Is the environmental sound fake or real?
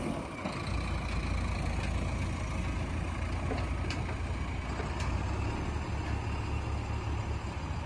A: real